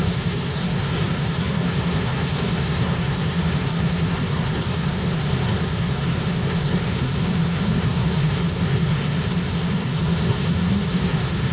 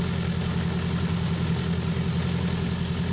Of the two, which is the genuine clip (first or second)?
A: second